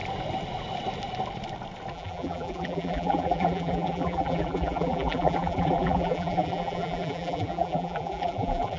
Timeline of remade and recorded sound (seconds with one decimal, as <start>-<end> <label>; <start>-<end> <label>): 0.0-1.9 recorded; 1.9-8.8 remade

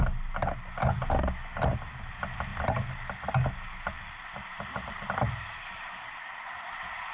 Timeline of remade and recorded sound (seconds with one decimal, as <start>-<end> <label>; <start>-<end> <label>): 0.0-4.5 recorded; 4.5-6.3 remade; 6.3-7.1 recorded

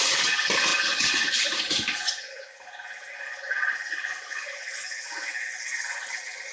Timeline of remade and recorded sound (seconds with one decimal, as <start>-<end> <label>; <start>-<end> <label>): 0.0-6.5 recorded

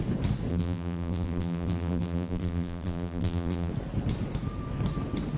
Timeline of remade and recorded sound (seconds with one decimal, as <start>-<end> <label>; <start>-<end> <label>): 0.0-0.5 recorded; 0.5-3.7 remade; 3.7-5.4 recorded

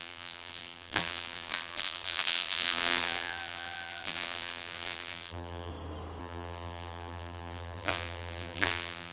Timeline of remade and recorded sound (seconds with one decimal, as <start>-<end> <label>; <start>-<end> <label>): 0.0-5.7 remade; 5.7-6.2 recorded; 6.2-9.1 remade

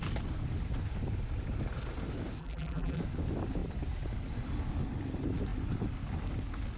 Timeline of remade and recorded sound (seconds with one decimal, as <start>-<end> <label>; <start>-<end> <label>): 0.0-2.4 recorded; 2.4-3.0 remade; 3.0-6.8 recorded

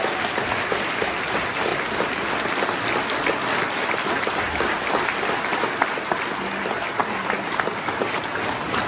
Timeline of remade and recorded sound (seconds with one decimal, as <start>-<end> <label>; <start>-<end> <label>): 0.0-7.0 recorded; 7.0-8.0 remade; 8.0-8.9 recorded